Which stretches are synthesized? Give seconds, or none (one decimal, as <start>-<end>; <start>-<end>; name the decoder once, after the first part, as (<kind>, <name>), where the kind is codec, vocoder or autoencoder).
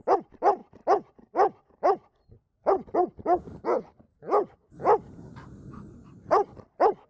none